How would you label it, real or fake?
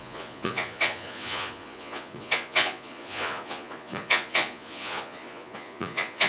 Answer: fake